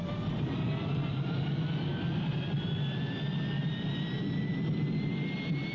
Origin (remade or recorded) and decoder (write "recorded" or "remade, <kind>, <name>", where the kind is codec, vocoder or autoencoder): recorded